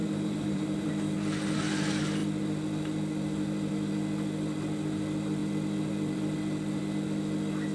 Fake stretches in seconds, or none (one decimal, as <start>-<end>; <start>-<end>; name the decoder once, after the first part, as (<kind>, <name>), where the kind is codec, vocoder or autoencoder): 0.0-0.9 (vocoder, BigVGAN v2)